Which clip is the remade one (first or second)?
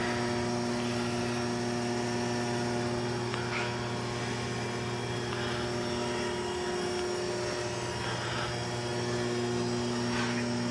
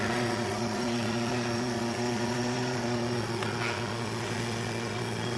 second